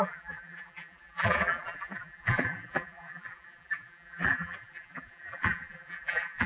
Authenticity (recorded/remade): remade